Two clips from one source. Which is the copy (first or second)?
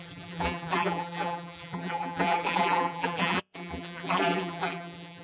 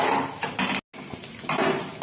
first